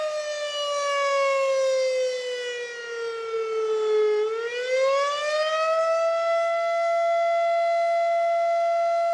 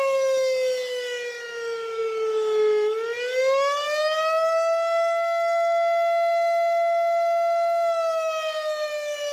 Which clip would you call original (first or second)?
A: first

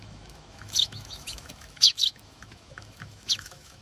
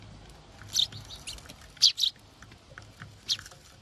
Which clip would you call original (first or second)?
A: second